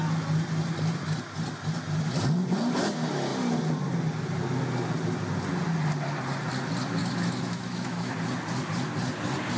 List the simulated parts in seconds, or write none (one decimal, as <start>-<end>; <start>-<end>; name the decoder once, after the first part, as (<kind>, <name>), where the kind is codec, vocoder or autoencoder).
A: 7.0-8.1 (autoencoder, DAC-VAE)